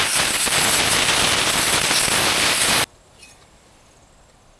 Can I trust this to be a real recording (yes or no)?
yes